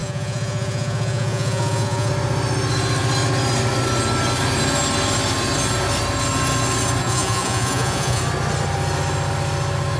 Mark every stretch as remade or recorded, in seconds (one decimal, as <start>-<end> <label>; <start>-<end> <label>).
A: 0.0-2.1 remade; 2.1-7.0 recorded; 7.0-8.2 remade; 8.2-10.0 recorded